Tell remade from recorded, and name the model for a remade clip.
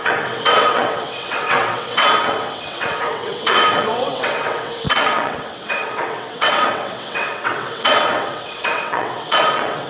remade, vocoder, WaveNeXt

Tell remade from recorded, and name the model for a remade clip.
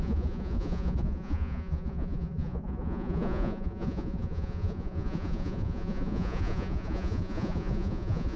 remade, vocoder, Vocos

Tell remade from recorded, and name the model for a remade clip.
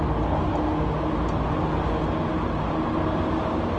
recorded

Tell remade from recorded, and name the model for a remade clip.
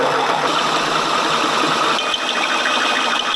recorded